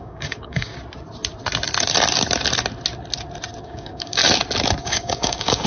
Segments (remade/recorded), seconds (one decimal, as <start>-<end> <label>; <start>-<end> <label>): 0.0-0.7 remade; 0.7-3.6 recorded; 3.6-4.2 remade; 4.2-4.8 recorded; 4.8-5.7 remade